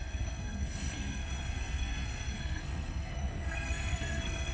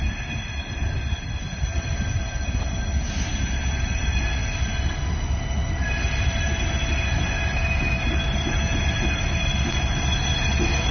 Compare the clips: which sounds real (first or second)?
second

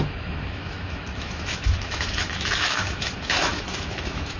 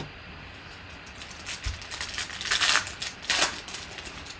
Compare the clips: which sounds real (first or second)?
second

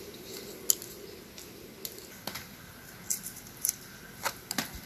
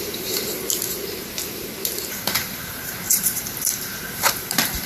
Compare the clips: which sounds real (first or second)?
first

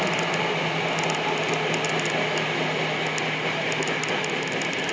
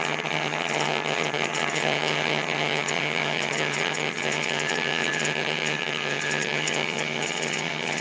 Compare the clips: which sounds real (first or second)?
first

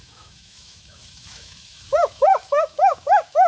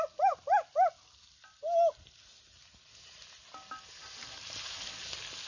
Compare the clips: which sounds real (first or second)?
second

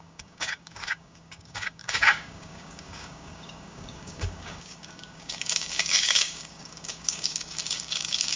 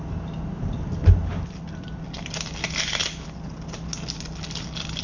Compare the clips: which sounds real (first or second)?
second